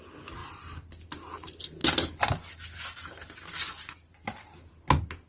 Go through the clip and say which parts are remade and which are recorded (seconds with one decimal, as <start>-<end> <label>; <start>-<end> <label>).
0.0-5.3 recorded